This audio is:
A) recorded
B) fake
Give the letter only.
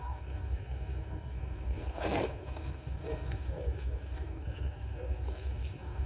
B